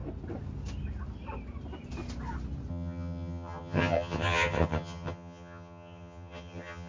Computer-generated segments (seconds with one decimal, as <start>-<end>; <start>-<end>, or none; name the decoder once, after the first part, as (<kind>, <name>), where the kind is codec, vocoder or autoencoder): 2.7-6.9 (vocoder, HiFi-GAN)